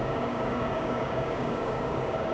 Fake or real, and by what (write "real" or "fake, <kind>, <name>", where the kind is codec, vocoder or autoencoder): fake, codec, DAC